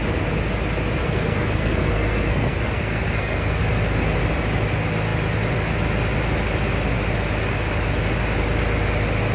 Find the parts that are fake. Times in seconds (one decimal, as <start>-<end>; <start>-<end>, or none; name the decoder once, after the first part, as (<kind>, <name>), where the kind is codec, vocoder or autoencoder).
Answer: 1.0-3.6 (codec, SNAC)